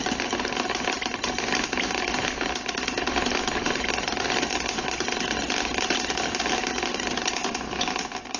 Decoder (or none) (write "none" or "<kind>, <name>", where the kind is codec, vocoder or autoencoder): none